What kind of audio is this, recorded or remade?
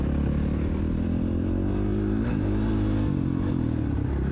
recorded